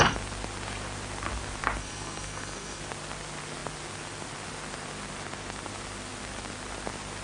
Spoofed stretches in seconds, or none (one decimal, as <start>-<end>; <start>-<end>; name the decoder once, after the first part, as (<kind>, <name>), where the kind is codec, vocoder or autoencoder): 1.8-2.8 (codec, SNAC)